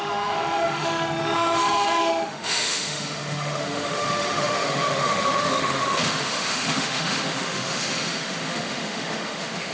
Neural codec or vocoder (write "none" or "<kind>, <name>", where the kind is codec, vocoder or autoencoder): autoencoder, DAC-VAE